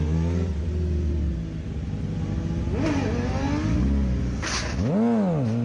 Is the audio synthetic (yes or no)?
no